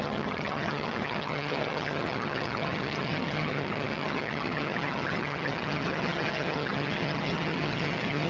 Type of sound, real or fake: fake